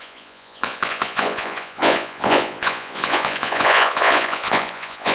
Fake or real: fake